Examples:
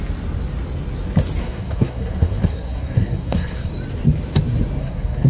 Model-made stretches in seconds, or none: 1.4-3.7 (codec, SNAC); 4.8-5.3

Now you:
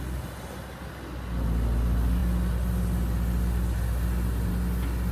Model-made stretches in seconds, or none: none

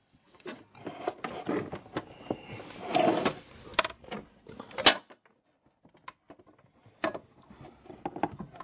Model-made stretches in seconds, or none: 0.0-0.6 (vocoder, WaveNeXt)

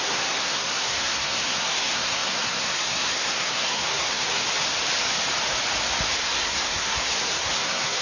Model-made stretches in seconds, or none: 0.0-4.4 (codec, SNAC); 6.1-8.0

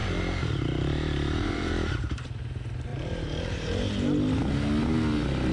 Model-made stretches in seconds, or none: 0.0-2.4 (vocoder, BigVGAN v2); 2.9-3.9

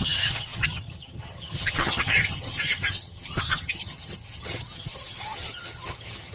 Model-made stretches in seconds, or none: 0.0-6.3 (vocoder, HiFi-GAN)

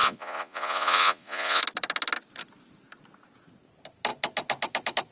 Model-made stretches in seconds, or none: 0.0-1.6 (vocoder, Vocos)